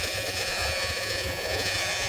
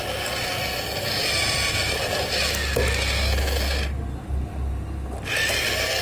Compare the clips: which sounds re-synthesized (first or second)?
first